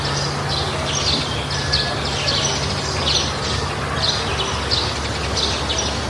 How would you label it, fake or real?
real